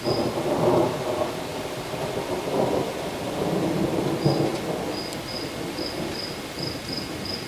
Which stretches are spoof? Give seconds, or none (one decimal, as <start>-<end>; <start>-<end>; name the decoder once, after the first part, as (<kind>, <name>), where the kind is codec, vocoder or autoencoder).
1.5-4.0 (vocoder, BigVGAN v2)